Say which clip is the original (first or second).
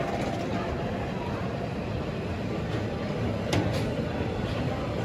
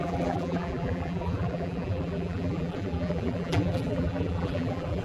first